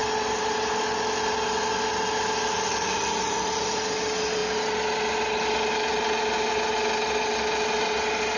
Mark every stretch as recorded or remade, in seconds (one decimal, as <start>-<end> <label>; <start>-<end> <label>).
0.0-8.4 recorded